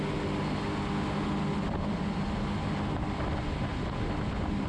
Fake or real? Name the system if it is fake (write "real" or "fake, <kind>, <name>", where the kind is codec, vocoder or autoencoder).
real